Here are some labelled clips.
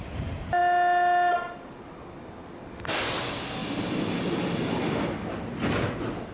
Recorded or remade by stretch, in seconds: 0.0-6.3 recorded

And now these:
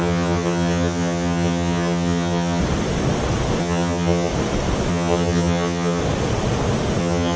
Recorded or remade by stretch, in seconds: 0.0-2.6 remade; 2.6-3.6 recorded; 3.6-4.3 remade; 4.3-4.9 recorded; 4.9-6.0 remade; 6.0-7.0 recorded; 7.0-7.4 remade

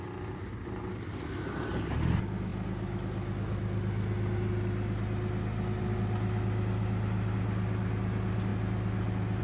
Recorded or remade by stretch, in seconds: 0.0-9.4 recorded